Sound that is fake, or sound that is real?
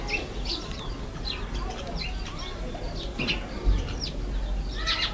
real